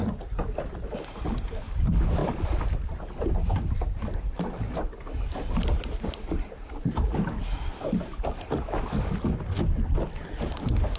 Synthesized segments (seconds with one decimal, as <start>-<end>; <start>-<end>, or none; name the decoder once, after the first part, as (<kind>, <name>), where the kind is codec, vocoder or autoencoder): 0.0-0.7 (vocoder, BigVGAN v2)